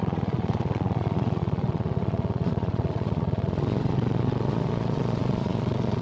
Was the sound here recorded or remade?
remade